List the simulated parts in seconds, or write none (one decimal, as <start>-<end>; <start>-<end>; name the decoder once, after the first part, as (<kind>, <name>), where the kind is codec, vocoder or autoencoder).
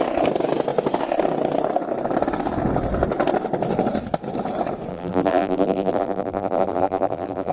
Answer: 4.9-7.5 (vocoder, BigVGAN v2)